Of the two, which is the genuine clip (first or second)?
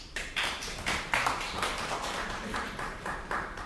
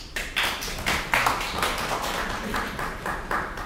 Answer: second